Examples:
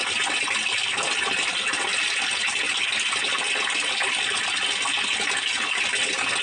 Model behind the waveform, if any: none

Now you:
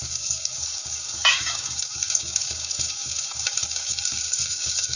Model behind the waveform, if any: codec, DAC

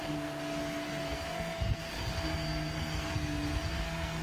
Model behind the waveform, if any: codec, SNAC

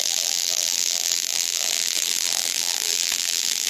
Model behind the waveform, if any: vocoder, BigVGAN v2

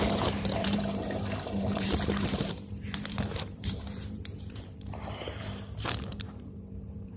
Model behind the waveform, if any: vocoder, BigVGAN v2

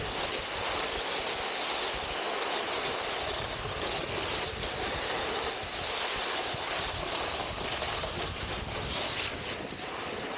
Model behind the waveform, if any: none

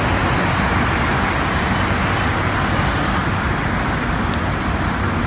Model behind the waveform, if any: none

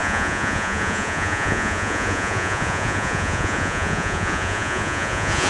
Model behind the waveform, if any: vocoder, Vocos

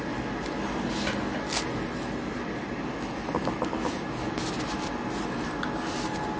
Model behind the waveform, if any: none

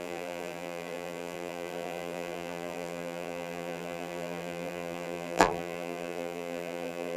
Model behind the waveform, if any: vocoder, BigVGAN v2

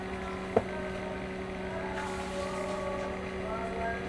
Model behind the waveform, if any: none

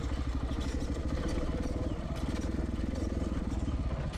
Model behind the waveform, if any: none